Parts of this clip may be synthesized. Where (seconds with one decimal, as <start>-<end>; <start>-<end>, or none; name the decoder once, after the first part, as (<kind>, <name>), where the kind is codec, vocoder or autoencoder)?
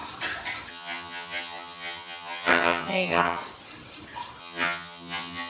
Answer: 0.7-3.4 (vocoder, HiFi-GAN); 4.4-5.5